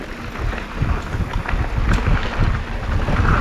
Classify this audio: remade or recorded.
recorded